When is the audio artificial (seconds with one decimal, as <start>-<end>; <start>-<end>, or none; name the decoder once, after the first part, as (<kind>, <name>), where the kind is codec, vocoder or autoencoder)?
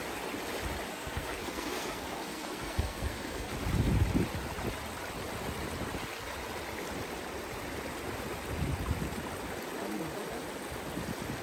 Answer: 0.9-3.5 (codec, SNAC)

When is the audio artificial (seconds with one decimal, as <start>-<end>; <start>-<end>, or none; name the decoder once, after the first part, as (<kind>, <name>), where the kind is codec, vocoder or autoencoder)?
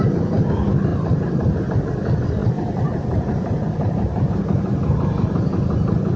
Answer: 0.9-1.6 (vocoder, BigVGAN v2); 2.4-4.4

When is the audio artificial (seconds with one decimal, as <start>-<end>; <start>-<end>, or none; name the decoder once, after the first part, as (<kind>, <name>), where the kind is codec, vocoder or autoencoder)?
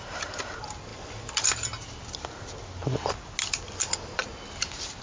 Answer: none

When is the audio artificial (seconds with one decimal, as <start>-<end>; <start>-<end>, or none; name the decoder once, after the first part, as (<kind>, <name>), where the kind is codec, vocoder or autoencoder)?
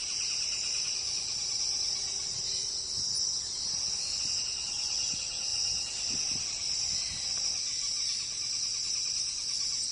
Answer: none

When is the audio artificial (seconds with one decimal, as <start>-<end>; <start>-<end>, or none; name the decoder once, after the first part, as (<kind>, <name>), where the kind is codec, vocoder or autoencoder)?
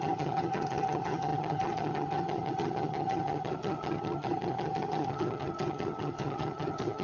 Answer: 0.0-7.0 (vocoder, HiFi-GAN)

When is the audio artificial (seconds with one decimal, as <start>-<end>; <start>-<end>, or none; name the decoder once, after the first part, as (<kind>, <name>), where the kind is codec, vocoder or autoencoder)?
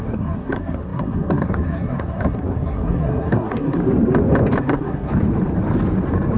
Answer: 0.0-3.8 (codec, SNAC); 4.6-5.1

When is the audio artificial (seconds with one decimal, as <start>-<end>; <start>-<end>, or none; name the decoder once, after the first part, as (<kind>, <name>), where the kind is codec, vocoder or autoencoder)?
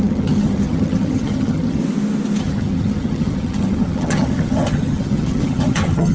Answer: 0.0-1.8 (vocoder, HiFi-GAN); 2.4-6.1